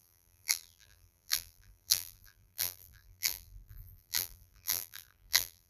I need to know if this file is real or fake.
fake